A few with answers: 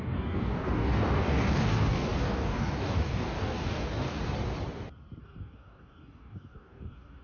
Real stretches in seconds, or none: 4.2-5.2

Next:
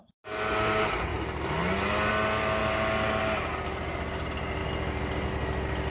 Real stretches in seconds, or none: 0.0-5.9

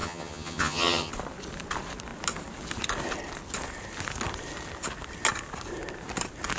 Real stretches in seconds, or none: 1.1-6.6

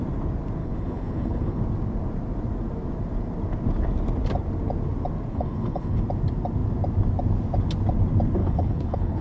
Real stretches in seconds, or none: 0.0-0.6; 1.6-5.3; 6.0-8.4

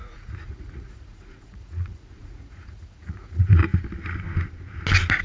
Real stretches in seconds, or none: 3.6-5.2

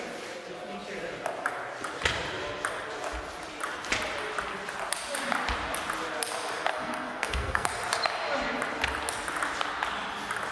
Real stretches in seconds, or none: 0.0-6.7; 7.7-10.5

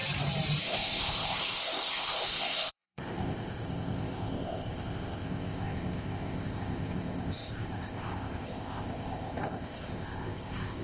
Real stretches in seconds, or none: 0.0-0.6

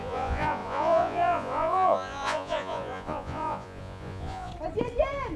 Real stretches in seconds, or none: 4.5-5.4